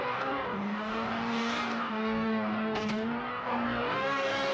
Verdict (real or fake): fake